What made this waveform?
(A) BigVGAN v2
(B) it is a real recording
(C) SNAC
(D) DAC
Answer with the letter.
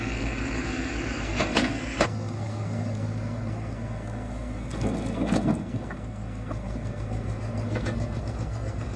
C